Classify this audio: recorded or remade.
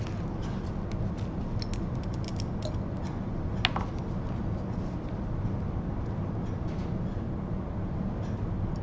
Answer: recorded